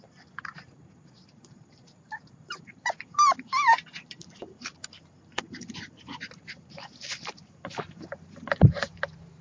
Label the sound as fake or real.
fake